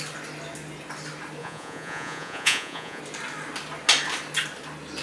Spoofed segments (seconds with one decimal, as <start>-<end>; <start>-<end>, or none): 1.4-3.0